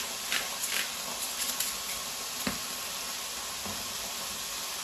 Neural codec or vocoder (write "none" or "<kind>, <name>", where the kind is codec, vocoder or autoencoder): none